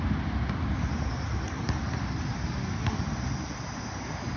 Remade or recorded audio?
recorded